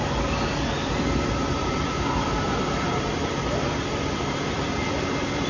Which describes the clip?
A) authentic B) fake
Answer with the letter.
B